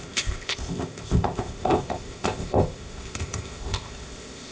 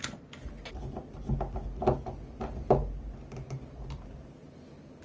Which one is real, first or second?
second